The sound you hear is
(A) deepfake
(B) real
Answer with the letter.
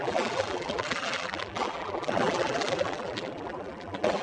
A